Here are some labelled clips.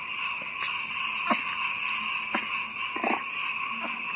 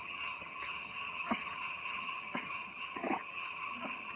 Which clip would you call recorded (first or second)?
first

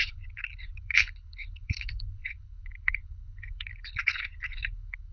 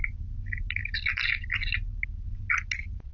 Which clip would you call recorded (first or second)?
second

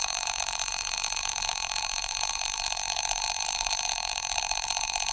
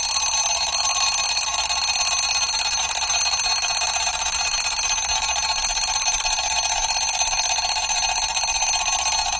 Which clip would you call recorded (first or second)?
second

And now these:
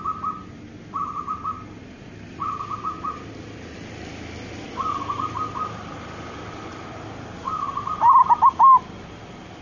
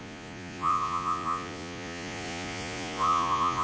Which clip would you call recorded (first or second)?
first